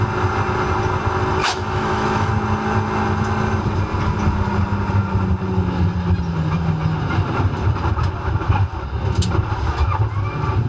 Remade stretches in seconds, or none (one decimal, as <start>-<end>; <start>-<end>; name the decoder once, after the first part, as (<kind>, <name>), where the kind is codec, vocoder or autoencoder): 1.4-2.3 (autoencoder, DAC-VAE)